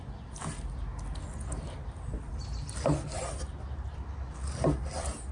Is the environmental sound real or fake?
real